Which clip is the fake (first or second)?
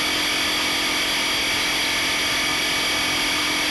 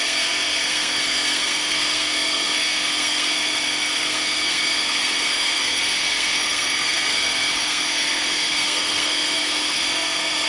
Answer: second